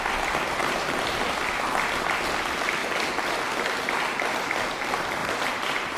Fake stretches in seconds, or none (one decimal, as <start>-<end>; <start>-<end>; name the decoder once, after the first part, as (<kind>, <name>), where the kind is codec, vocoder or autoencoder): 0.6-1.2 (vocoder, BigVGAN v2); 5.2-6.0